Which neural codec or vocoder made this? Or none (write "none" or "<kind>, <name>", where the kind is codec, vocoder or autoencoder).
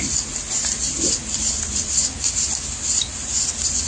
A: vocoder, BigVGAN v2